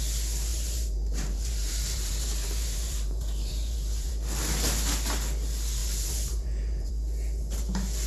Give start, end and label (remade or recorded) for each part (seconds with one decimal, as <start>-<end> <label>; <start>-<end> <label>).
0.0-0.5 recorded; 0.5-4.1 remade; 4.1-5.8 recorded; 5.8-6.9 remade; 6.9-8.1 recorded